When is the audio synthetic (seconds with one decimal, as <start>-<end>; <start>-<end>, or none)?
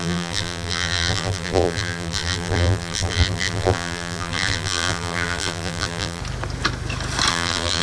0.0-6.2; 7.3-7.8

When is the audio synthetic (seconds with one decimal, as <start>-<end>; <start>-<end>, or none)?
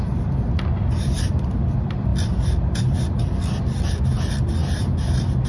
0.0-5.5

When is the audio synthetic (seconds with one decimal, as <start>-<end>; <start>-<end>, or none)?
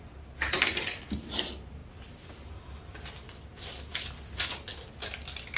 none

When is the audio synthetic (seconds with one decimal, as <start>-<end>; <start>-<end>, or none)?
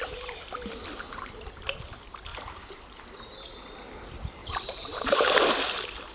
2.3-3.0; 4.4-5.4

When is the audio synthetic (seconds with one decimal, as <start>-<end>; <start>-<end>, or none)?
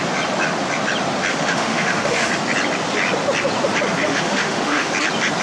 1.3-2.3; 4.0-4.9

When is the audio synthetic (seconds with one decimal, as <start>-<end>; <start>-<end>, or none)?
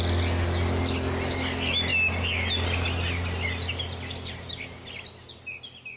none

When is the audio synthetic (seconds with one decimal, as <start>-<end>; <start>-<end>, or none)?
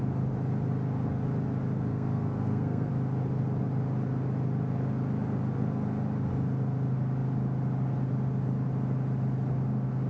1.9-2.9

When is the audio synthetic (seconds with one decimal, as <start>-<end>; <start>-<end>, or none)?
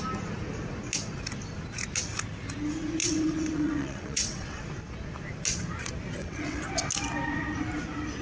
3.0-4.6; 6.2-6.7